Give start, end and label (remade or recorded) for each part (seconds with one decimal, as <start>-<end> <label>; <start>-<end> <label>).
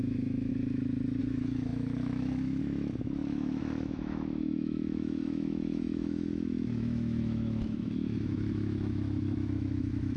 0.0-0.5 remade; 0.5-1.2 recorded; 1.2-10.2 remade